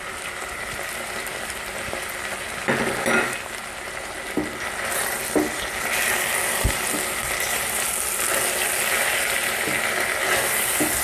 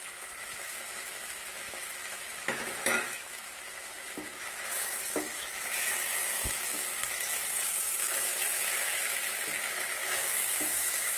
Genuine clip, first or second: first